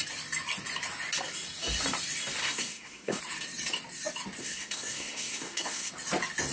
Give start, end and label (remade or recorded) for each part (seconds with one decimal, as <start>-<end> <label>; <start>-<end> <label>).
0.0-2.4 recorded; 2.4-3.2 remade; 3.2-4.4 recorded; 4.4-5.9 remade; 5.9-6.5 recorded

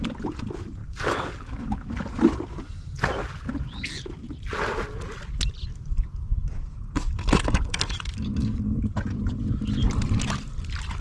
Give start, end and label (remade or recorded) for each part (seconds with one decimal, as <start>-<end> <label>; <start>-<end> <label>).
0.0-0.8 recorded; 0.8-1.9 remade; 1.9-5.7 recorded; 5.7-8.8 remade; 8.8-11.0 recorded

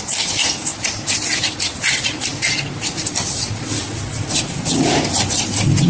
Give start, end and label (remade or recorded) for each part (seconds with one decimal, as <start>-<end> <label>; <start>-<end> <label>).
0.0-0.7 remade; 0.7-1.5 recorded; 1.5-2.3 remade; 2.3-2.9 recorded; 2.9-4.9 remade; 4.9-5.9 recorded

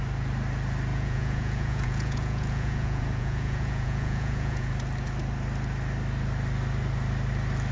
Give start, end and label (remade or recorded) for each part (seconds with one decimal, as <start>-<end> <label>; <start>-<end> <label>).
0.0-0.9 recorded; 0.9-4.7 remade; 4.7-7.7 recorded

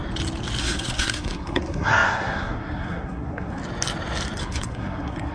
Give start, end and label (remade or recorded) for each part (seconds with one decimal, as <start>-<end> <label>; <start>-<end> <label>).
0.0-0.6 recorded; 0.6-3.6 remade; 3.6-4.4 recorded; 4.4-5.3 remade

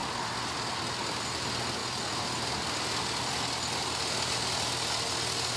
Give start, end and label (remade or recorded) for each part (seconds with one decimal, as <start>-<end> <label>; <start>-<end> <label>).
0.0-5.6 recorded